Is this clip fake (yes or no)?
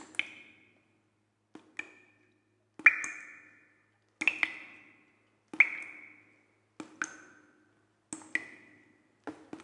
no